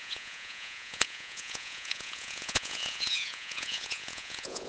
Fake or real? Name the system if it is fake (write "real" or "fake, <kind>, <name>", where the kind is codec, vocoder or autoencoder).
fake, vocoder, Vocos